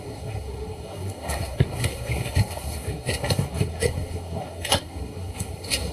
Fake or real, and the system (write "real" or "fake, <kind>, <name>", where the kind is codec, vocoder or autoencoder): fake, codec, SNAC